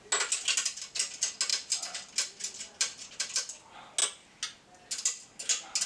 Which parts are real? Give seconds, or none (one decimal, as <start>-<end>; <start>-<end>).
0.0-5.9